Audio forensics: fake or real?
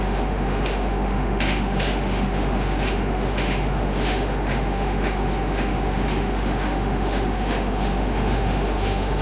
fake